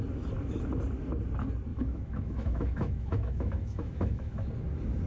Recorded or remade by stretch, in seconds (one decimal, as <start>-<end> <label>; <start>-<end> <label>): 0.0-1.7 recorded; 1.7-4.5 remade; 4.5-5.1 recorded